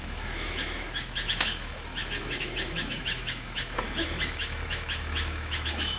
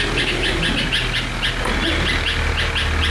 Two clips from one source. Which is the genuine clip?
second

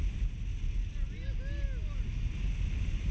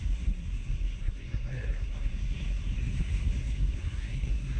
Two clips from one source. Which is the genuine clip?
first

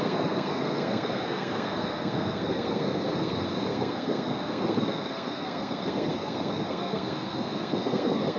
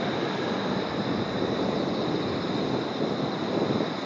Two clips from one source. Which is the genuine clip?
second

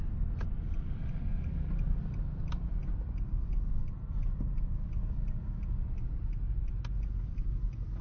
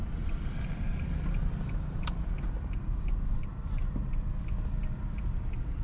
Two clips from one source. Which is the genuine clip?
first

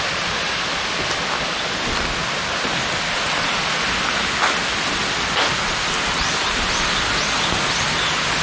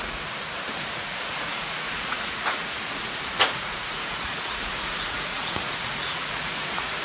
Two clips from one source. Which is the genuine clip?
first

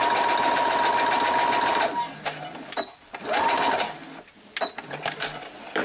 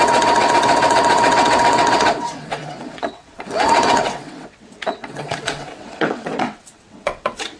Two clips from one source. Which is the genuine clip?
first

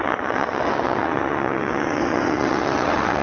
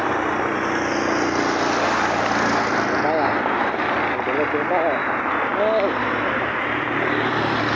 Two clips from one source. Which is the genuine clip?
second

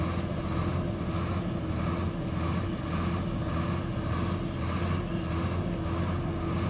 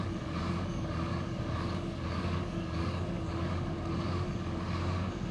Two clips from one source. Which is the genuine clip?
first